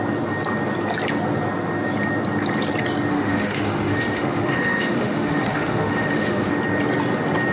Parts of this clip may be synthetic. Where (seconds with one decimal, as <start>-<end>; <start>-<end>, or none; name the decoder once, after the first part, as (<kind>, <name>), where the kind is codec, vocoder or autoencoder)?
3.1-6.5 (autoencoder, DAC-VAE)